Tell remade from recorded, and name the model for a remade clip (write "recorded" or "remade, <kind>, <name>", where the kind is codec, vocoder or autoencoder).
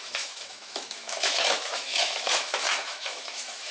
remade, autoencoder, DAC-VAE